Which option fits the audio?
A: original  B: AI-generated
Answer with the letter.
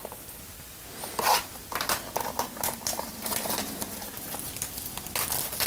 A